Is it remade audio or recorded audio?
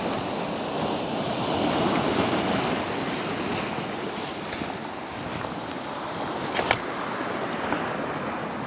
recorded